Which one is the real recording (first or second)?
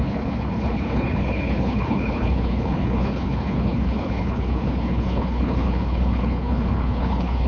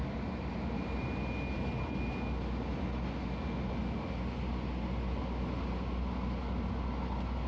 second